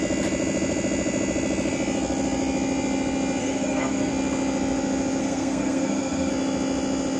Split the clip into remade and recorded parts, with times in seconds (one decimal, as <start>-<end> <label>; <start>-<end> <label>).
0.0-3.4 recorded; 3.4-4.1 remade; 4.1-5.2 recorded; 5.2-6.3 remade; 6.3-7.2 recorded